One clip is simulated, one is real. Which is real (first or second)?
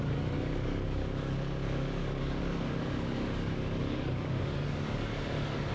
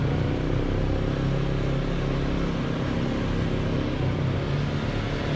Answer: second